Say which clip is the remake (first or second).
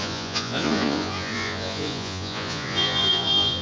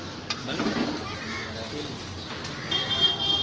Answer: first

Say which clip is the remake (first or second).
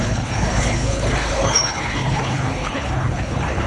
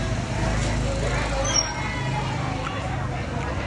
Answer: first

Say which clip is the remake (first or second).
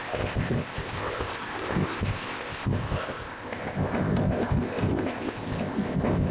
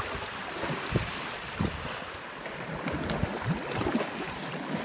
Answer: first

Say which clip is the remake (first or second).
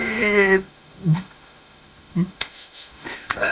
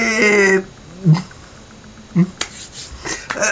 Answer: first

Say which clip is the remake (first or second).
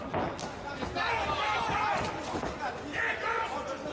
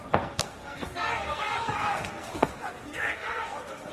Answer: second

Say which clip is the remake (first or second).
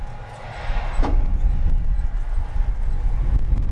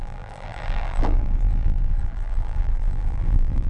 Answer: second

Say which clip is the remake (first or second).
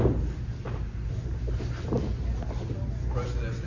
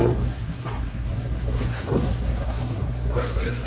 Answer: second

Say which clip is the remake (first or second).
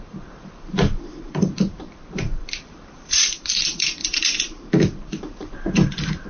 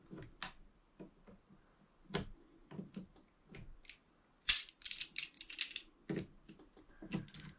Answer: first